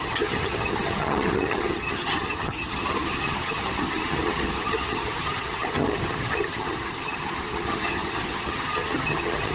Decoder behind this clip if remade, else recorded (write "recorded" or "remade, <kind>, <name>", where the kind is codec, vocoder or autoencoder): remade, vocoder, HiFi-GAN